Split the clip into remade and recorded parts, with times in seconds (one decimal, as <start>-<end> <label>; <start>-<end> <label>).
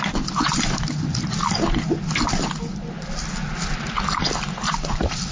0.0-2.7 recorded; 2.7-4.7 remade; 4.7-5.3 recorded